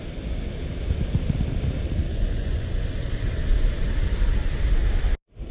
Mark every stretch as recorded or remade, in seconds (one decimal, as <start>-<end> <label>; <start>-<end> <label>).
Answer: 0.0-2.1 recorded; 2.1-2.7 remade; 2.7-5.5 recorded